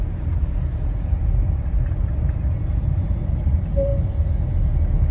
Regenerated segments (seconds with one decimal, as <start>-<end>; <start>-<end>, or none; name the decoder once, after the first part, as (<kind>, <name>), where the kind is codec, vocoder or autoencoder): 0.0-3.9 (vocoder, BigVGAN v2)